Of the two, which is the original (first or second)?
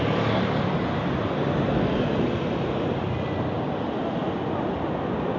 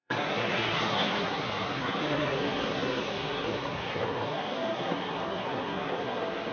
first